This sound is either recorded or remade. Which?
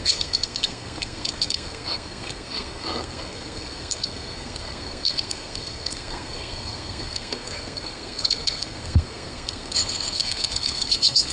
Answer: remade